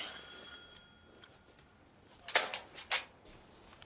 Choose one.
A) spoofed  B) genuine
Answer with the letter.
B